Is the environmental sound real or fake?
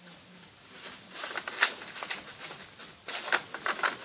real